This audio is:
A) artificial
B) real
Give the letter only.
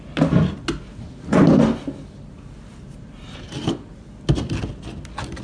B